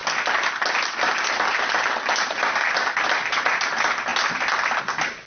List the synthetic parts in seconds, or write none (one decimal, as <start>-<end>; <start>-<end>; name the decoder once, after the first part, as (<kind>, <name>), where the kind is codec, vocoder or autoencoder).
none